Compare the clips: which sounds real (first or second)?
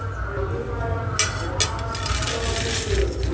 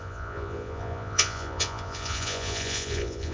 first